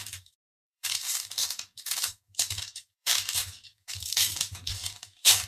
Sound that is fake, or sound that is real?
fake